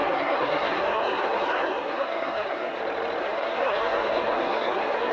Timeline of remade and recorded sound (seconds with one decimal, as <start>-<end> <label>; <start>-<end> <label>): 0.0-2.8 remade; 2.8-3.2 recorded; 3.2-5.1 remade